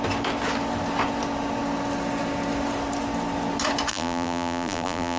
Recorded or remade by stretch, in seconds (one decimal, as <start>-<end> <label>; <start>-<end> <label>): 0.0-3.9 recorded; 3.9-5.2 remade